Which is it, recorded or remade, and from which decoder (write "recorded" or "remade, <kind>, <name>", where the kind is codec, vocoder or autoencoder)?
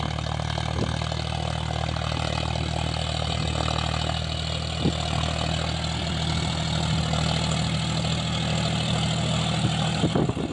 recorded